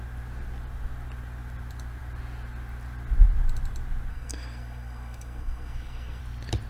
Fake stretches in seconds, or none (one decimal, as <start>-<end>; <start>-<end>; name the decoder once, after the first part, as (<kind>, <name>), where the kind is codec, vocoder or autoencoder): 4.1-6.2 (codec, SNAC)